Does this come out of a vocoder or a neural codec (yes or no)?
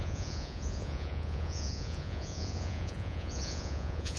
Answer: yes